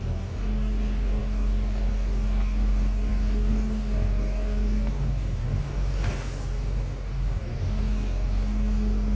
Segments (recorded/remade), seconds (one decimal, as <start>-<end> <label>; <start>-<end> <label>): 0.0-9.1 remade